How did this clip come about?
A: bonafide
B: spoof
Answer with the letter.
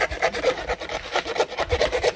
B